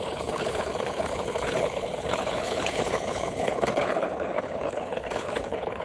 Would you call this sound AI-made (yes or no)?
yes